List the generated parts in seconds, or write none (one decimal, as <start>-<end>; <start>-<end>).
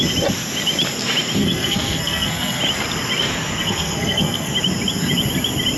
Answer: 1.4-2.6; 3.6-4.5